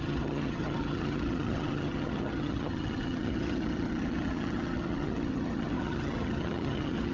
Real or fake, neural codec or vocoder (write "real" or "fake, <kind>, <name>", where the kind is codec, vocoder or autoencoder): fake, vocoder, HiFi-GAN